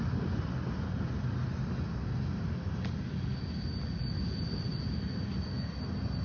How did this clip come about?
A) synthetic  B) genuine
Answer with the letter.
B